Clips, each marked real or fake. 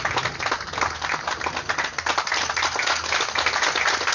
real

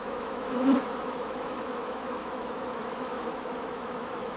fake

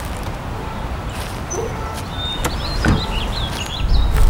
real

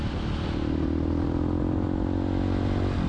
real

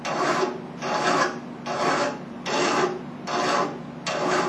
real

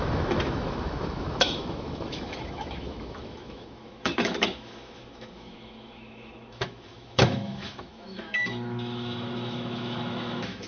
fake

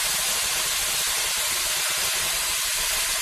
real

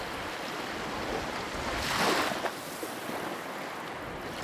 real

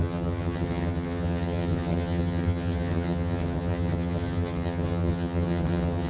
fake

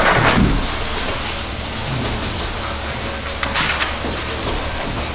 real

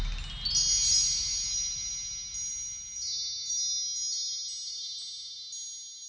real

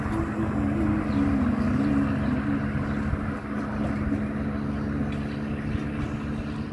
real